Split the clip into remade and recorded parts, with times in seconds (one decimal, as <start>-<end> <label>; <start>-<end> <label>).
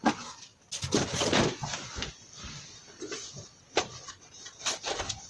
0.0-5.3 recorded